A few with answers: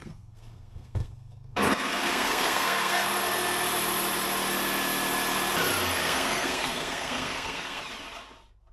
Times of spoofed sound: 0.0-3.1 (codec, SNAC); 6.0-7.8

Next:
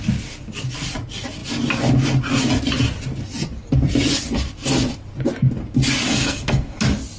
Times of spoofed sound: 6.1-6.8 (codec, SNAC)